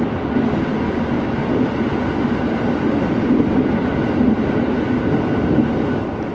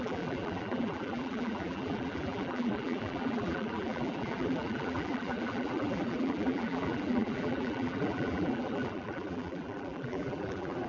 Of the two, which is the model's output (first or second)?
second